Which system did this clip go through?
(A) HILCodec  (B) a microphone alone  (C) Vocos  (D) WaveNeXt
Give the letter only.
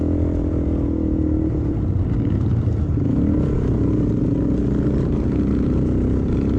B